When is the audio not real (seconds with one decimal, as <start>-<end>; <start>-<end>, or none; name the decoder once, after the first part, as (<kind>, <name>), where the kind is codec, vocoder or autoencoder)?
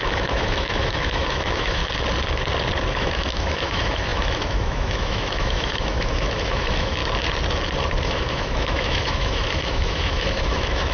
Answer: 0.0-1.8 (autoencoder, DAC-VAE); 2.9-7.0; 8.0-10.9